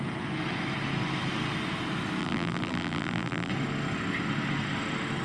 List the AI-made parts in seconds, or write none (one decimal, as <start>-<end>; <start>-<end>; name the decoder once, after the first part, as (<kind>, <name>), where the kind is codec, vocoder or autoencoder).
2.2-3.5 (vocoder, BigVGAN v2)